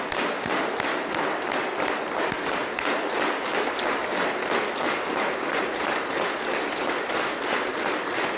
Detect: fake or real real